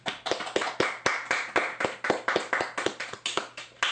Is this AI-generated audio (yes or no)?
no